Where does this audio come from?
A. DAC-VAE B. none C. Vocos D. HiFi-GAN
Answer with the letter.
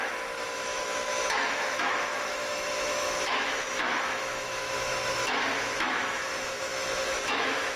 A